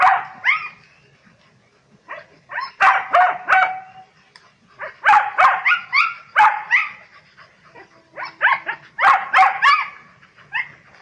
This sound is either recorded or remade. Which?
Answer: recorded